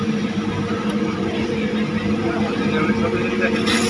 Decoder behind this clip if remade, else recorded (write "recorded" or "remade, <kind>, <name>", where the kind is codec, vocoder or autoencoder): recorded